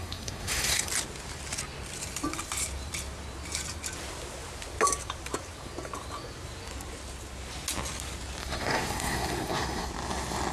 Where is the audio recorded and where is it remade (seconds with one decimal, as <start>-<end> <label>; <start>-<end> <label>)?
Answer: 0.0-0.9 remade; 0.9-8.4 recorded; 8.4-9.9 remade; 9.9-10.5 recorded